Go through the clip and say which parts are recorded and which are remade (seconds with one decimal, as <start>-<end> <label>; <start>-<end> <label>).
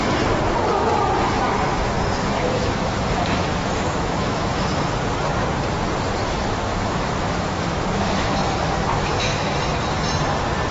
0.0-2.2 recorded; 2.2-4.9 remade; 4.9-6.7 recorded; 6.7-8.4 remade; 8.4-8.9 recorded; 8.9-9.5 remade; 9.5-10.7 recorded